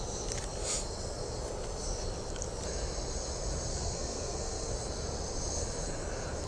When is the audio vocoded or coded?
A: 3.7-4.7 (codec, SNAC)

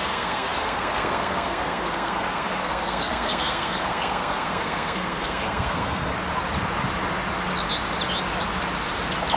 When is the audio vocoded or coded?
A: 0.0-6.1 (codec, SNAC)

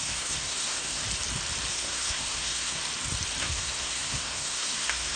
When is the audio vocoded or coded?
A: 0.0-1.0 (codec, SNAC); 1.7-2.8; 3.4-5.2

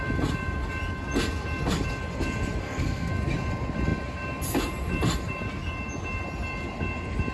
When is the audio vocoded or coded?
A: 2.6-3.1 (codec, SNAC)